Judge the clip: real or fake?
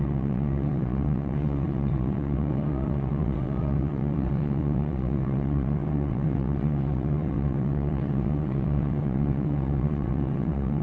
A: fake